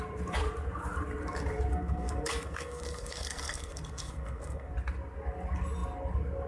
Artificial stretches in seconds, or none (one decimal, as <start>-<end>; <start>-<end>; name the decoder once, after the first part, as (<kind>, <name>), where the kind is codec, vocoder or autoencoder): 1.7-4.7 (codec, SNAC)